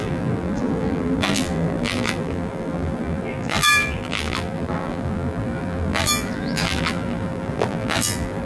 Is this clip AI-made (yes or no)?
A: yes